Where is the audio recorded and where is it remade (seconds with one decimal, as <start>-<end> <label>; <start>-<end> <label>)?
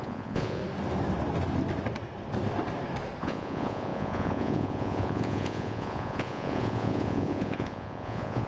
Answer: 0.0-0.6 remade; 0.6-3.2 recorded; 3.2-8.5 remade